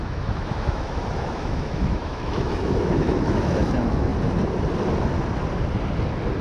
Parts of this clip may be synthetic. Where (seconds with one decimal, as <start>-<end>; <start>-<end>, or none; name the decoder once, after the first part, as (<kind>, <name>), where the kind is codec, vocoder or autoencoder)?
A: 0.0-4.1 (autoencoder, DAC-VAE)